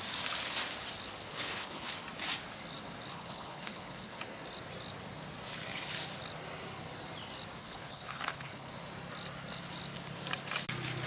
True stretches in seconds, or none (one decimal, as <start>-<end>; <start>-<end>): 0.0-1.2; 1.9-3.1; 4.2-7.6; 8.7-11.1